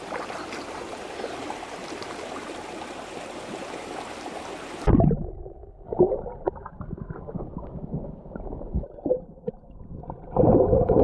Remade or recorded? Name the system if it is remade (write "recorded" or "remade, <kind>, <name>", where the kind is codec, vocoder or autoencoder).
remade, vocoder, BigVGAN v2